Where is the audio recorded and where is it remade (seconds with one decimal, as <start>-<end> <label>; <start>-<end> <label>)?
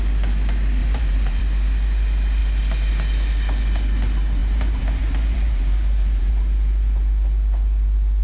0.0-0.8 recorded; 0.8-1.4 remade; 1.4-4.4 recorded; 4.4-6.3 remade; 6.3-8.2 recorded